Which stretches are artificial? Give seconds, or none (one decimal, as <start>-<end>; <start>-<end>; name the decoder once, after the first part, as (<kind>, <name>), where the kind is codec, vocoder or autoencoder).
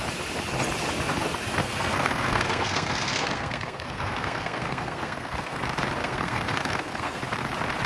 1.6-5.6 (codec, SNAC); 6.0-7.2